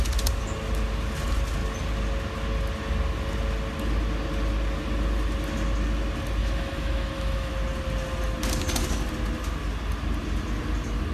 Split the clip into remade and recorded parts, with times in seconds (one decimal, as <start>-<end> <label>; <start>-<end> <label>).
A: 0.0-6.4 recorded; 6.4-7.5 remade; 7.5-11.1 recorded